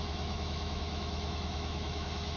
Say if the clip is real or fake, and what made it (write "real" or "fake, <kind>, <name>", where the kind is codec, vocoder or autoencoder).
fake, autoencoder, DAC-VAE